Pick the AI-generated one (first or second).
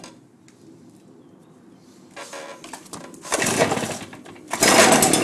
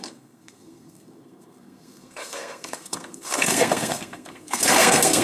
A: second